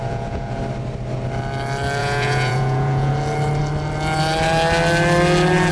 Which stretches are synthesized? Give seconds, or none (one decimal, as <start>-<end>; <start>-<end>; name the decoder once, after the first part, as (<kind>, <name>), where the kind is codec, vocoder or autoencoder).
0.0-0.6 (vocoder, Vocos); 2.0-3.1